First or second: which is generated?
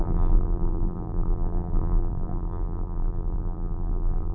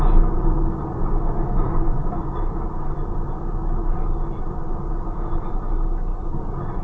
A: first